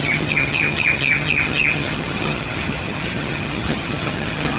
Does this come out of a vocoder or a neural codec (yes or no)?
yes